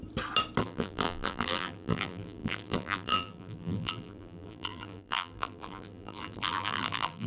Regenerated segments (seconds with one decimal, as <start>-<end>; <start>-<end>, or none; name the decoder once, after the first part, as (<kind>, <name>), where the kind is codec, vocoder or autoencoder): 0.6-7.3 (vocoder, BigVGAN v2)